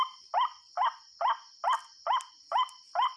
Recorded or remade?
recorded